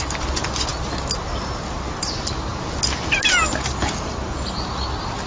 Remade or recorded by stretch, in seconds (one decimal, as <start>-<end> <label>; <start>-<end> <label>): 0.0-5.3 recorded